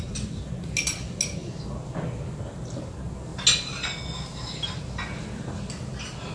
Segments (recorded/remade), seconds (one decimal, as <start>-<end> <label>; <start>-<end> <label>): 0.0-6.3 recorded